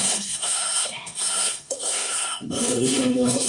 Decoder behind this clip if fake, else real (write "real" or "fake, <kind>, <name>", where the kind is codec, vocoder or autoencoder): fake, codec, SNAC